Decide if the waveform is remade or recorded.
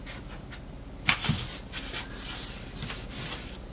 recorded